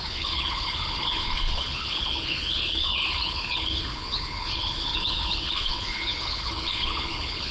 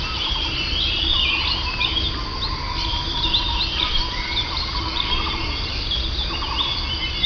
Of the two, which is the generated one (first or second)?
first